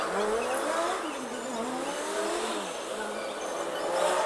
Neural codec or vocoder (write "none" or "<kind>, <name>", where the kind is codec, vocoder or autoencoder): none